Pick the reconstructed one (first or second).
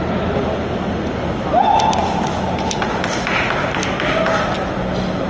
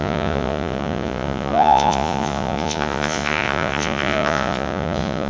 second